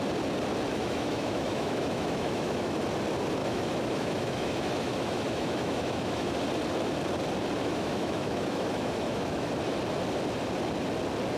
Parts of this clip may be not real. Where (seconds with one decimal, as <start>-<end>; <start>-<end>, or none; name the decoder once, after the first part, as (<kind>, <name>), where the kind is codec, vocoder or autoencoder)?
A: 0.7-2.8 (autoencoder, DAC-VAE); 3.4-6.4; 7.6-9.5